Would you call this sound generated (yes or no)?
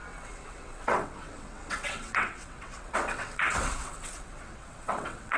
yes